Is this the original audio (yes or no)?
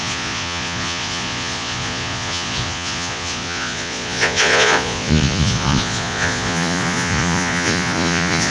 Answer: no